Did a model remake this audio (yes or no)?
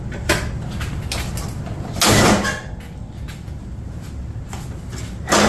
no